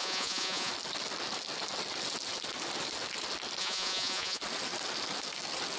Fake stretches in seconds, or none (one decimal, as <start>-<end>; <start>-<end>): 0.0-0.7; 3.6-4.4